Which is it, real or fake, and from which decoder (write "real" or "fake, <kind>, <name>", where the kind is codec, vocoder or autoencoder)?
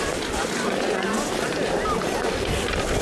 real